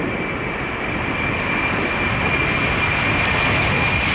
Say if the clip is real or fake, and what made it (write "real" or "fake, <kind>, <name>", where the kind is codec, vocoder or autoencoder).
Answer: real